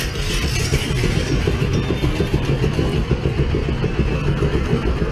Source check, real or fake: fake